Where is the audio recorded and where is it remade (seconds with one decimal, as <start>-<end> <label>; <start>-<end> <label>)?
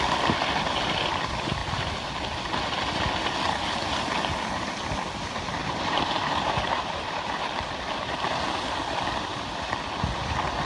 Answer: 0.0-5.6 recorded; 5.6-8.3 remade; 8.3-10.7 recorded